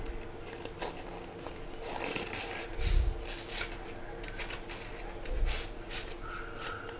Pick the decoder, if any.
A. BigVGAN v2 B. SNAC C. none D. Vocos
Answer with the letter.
C